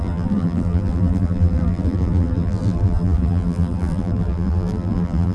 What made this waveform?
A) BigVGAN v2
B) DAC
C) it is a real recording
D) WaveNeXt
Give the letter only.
A